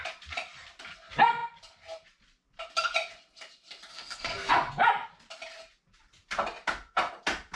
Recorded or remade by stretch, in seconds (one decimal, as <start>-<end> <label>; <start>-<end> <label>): 0.0-3.9 recorded; 3.9-4.5 remade; 4.5-7.6 recorded